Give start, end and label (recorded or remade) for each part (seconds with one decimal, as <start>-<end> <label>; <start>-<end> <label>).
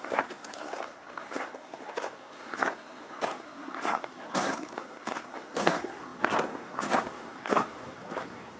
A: 0.0-8.6 remade